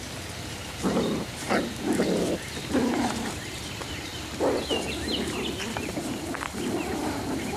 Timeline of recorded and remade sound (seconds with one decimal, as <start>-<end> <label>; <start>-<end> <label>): 0.0-7.6 recorded